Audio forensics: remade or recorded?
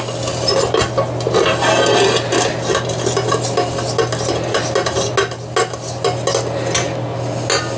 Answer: recorded